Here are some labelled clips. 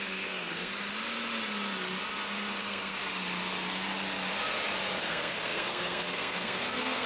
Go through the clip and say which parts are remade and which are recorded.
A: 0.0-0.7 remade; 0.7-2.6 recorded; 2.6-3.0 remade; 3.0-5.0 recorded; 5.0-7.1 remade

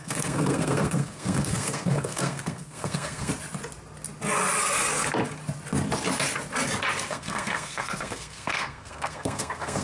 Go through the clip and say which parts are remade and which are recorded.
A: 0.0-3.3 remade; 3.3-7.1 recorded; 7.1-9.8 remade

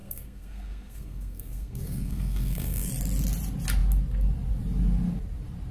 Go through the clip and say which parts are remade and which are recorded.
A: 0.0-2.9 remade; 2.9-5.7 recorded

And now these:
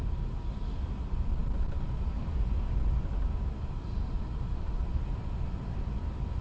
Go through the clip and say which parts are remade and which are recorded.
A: 0.0-6.4 recorded